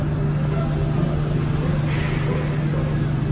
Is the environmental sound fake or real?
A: real